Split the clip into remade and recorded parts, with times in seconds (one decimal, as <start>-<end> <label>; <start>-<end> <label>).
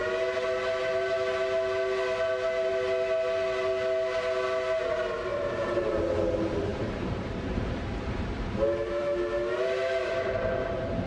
0.0-5.3 recorded; 5.3-6.0 remade; 6.0-6.7 recorded; 6.7-9.0 remade; 9.0-11.1 recorded